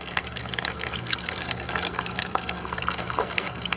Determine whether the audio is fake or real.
fake